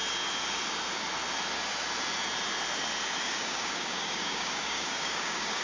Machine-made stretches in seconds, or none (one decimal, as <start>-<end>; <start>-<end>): 3.2-5.6